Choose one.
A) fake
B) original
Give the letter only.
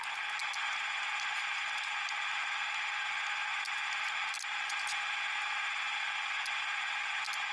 B